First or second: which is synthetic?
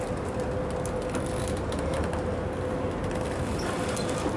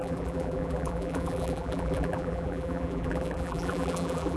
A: second